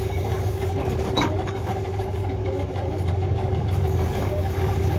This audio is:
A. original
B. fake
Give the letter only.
B